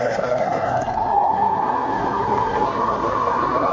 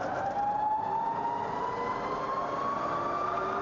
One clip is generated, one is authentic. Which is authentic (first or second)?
second